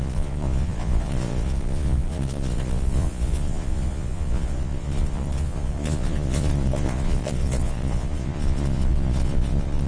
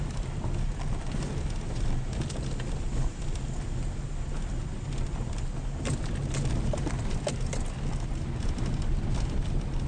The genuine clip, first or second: second